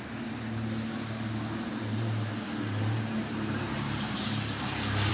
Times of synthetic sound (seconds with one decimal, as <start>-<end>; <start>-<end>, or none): 1.7-5.1